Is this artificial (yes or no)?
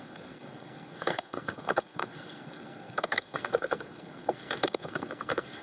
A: yes